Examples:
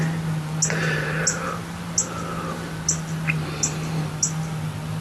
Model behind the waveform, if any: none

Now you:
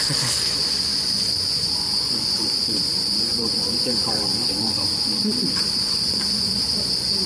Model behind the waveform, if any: vocoder, Vocos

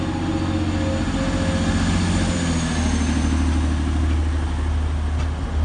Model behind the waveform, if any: none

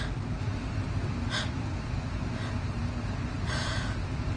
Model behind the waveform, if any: none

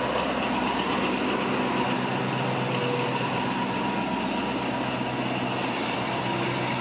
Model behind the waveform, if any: none